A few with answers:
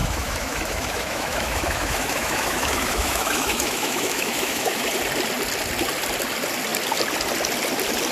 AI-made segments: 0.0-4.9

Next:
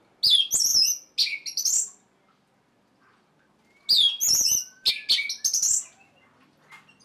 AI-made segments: none